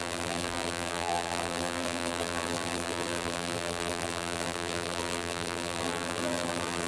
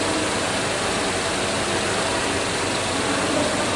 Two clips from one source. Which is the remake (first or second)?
first